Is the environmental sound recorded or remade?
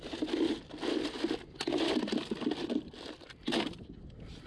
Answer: recorded